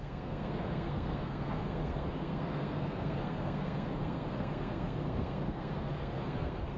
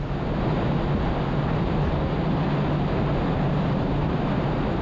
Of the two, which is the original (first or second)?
second